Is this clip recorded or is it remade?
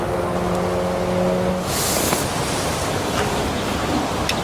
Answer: recorded